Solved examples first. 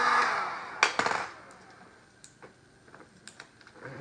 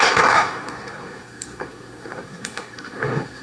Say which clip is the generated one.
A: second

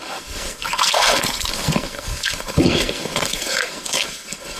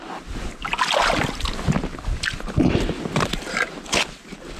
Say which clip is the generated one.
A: first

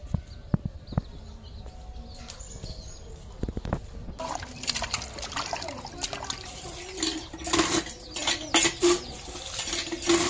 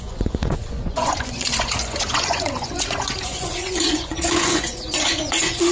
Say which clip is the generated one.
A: second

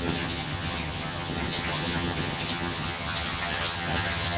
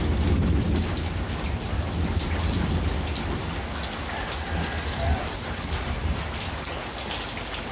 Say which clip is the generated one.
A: first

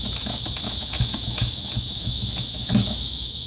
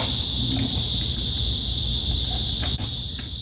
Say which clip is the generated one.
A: first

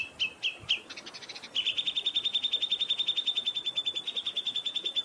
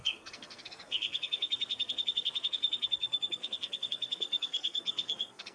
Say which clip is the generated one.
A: second